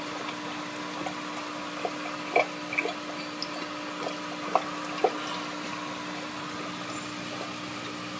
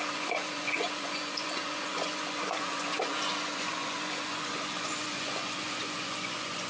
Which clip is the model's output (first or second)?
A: second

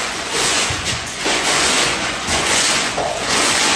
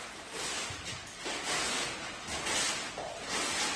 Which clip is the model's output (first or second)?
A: first